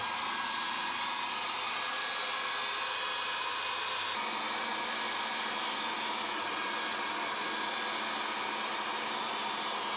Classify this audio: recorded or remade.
recorded